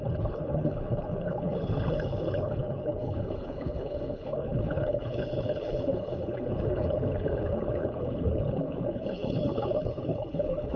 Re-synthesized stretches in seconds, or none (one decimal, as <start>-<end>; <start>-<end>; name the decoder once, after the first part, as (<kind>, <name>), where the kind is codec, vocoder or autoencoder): 0.0-10.8 (codec, HILCodec)